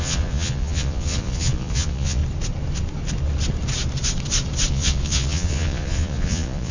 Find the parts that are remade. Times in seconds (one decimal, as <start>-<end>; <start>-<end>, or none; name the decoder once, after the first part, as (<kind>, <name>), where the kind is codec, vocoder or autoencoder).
0.0-2.2 (vocoder, Vocos); 4.7-6.7